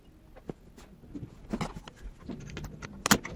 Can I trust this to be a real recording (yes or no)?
yes